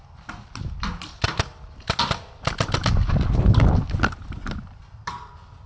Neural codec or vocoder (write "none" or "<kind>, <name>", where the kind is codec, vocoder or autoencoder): none